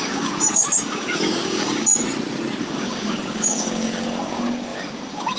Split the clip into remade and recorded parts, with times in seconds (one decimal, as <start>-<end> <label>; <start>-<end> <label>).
0.0-2.0 remade; 2.0-2.6 recorded; 2.6-5.4 remade